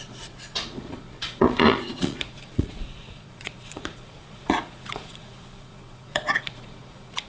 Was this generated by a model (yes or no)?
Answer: yes